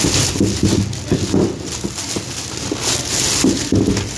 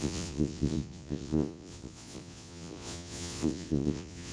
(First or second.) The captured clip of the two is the first